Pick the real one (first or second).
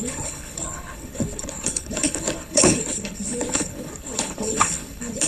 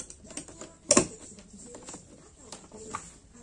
second